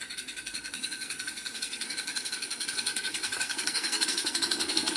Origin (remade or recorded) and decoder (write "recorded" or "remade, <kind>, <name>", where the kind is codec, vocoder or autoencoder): remade, codec, SNAC